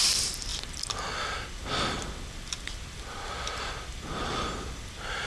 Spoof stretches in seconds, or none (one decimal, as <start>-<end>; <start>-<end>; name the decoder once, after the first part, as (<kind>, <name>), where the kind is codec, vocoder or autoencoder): none